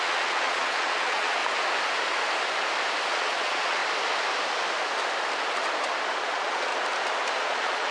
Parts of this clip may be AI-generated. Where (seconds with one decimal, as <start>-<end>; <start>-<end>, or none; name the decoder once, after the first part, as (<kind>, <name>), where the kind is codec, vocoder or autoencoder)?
0.0-1.4 (vocoder, Vocos); 3.0-3.8; 6.2-6.7; 7.4-7.9